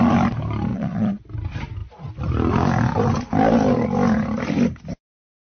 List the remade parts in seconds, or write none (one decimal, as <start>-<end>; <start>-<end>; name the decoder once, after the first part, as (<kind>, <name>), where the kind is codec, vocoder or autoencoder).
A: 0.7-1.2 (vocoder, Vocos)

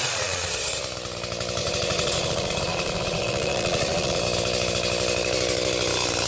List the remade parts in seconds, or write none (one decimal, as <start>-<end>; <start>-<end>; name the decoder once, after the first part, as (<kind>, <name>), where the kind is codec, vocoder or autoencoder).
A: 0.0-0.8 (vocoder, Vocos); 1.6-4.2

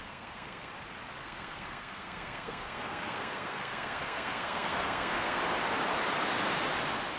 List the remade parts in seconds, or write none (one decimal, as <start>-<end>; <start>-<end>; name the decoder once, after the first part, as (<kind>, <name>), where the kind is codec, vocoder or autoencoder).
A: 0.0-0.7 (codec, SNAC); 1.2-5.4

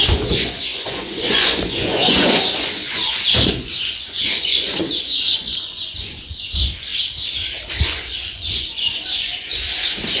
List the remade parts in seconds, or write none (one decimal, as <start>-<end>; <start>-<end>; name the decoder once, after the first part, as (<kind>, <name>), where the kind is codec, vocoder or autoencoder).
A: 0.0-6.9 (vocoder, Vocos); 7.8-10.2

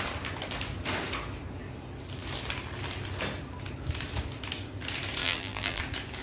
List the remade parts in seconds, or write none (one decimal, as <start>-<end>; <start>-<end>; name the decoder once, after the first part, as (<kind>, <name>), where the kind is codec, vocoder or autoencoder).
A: 5.2-5.8 (vocoder, BigVGAN v2)

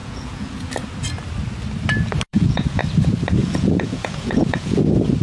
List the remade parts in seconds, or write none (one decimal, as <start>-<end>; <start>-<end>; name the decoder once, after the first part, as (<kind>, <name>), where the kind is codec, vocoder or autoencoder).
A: 0.0-0.7 (vocoder, Vocos); 2.3-2.8; 3.4-4.8

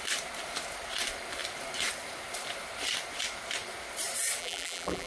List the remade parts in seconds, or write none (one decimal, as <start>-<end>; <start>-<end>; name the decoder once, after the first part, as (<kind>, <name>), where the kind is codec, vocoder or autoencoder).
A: 4.4-5.1 (vocoder, BigVGAN v2)